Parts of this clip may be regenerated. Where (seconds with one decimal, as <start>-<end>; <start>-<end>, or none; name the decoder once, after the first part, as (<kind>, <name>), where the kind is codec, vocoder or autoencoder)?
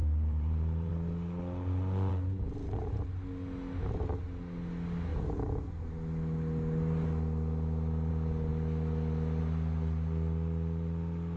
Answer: 0.0-0.9 (vocoder, BigVGAN v2); 2.1-3.0